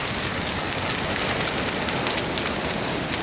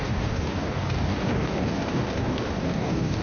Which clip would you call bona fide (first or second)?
first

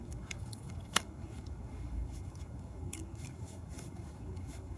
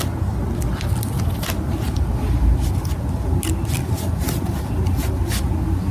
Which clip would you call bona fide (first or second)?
second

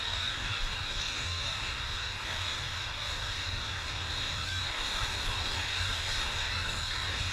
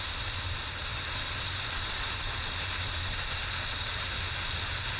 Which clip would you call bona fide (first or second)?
second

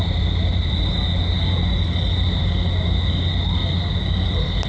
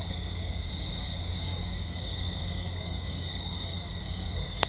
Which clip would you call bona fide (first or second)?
first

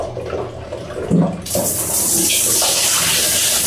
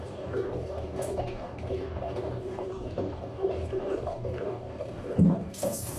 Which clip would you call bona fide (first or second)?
first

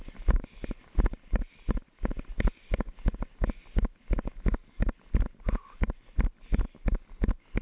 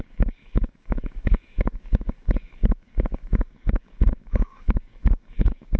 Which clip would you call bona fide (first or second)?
first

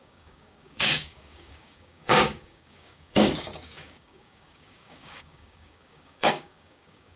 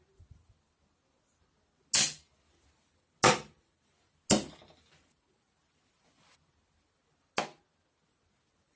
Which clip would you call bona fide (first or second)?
second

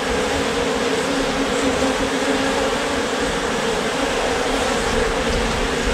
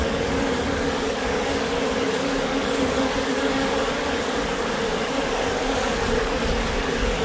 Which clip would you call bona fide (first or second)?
first